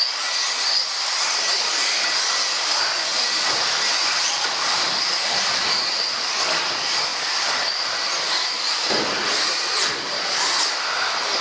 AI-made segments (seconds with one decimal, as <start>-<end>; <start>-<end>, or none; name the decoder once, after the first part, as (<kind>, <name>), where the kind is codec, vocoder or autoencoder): 3.1-5.5 (vocoder, BigVGAN v2); 7.1-7.9